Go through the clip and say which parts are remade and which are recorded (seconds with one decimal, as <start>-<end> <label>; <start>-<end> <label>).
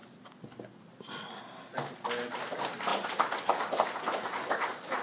0.0-5.0 recorded